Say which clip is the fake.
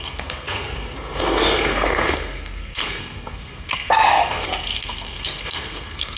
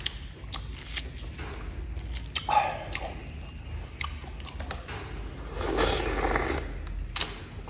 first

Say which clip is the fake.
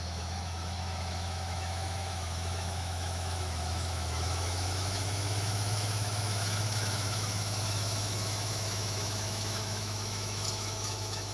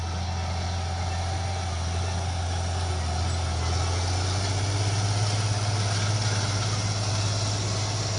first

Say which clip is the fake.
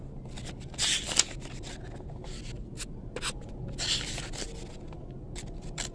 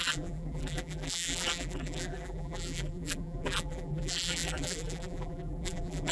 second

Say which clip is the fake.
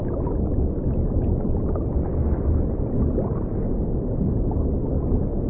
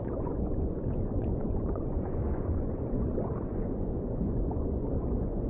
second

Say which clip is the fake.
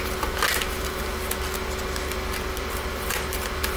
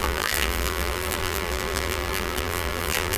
second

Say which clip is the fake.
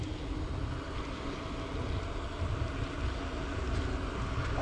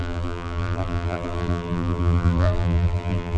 second